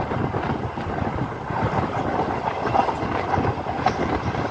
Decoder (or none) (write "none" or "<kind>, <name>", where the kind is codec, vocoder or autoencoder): none